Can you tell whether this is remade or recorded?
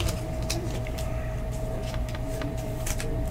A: remade